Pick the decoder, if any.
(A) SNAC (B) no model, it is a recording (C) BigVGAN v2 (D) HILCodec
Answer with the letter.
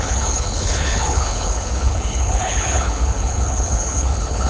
D